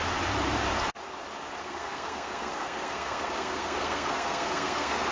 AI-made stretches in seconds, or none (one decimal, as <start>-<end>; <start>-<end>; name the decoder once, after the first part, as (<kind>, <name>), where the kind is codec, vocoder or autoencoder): 1.6-5.1 (codec, SNAC)